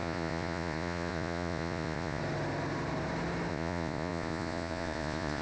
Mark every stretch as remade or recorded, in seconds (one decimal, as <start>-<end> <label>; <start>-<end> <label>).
0.0-2.2 remade; 2.2-3.5 recorded; 3.5-5.4 remade